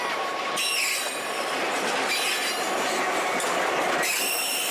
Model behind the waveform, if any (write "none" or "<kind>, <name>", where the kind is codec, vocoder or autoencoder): none